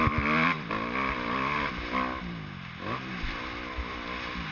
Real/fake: real